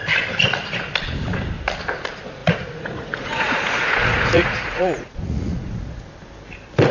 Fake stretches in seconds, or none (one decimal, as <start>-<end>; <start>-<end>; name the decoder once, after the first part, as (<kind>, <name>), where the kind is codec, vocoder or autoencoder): 2.4-6.0 (vocoder, Vocos)